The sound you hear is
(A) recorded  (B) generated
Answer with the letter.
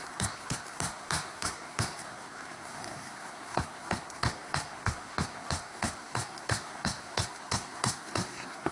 B